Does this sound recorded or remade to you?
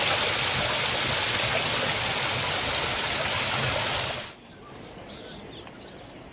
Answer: recorded